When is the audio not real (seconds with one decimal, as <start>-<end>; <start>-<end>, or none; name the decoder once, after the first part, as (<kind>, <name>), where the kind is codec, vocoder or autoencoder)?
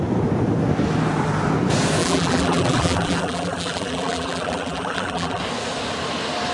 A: 2.0-5.4 (vocoder, BigVGAN v2)